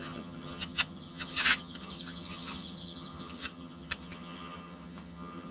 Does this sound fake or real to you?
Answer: fake